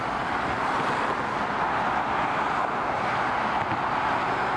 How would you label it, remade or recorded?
recorded